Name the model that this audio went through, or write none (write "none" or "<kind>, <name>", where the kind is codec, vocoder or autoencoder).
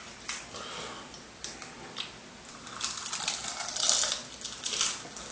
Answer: none